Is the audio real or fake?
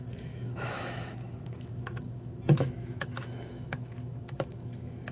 fake